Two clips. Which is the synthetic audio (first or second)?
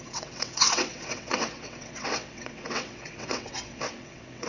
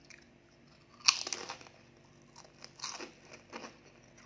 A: first